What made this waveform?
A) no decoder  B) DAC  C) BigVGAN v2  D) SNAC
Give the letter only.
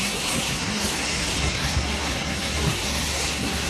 D